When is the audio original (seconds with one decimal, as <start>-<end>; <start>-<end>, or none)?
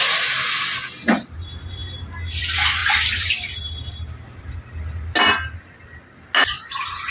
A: 0.0-7.1